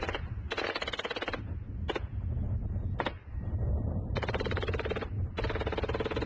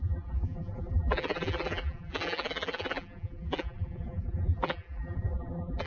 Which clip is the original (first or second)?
first